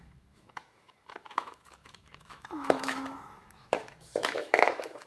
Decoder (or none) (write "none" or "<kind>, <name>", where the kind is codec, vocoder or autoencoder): autoencoder, DAC-VAE